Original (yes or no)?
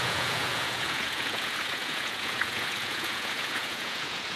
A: no